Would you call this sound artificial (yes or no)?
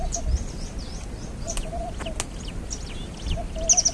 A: no